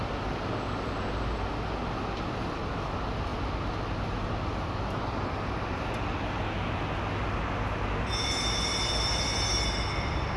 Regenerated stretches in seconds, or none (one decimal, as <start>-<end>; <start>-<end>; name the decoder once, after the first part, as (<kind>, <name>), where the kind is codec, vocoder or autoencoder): none